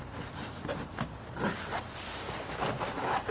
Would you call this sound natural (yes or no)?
yes